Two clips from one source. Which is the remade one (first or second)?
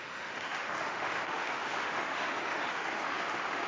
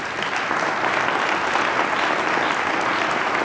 first